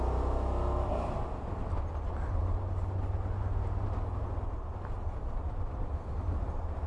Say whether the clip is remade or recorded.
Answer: recorded